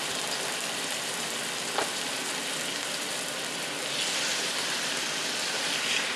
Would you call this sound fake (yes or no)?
no